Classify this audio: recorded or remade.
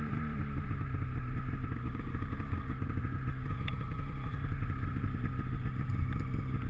remade